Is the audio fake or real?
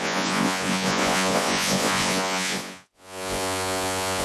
fake